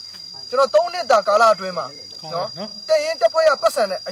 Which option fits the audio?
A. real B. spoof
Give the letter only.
A